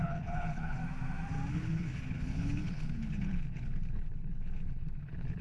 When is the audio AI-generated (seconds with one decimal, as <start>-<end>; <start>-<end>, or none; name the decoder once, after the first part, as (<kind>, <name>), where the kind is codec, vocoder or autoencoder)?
0.0-0.8 (codec, HILCodec); 1.5-5.4